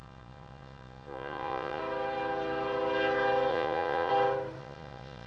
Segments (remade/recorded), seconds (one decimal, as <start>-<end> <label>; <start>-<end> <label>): 0.0-1.8 remade; 1.8-3.5 recorded; 3.5-4.1 remade; 4.1-4.6 recorded; 4.6-5.3 remade